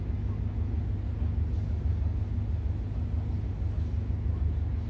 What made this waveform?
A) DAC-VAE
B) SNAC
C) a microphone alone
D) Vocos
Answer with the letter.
C